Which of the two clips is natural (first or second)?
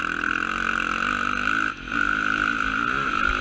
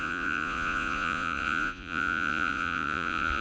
first